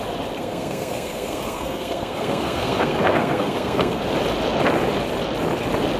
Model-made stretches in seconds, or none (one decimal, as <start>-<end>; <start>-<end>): 0.4-4.0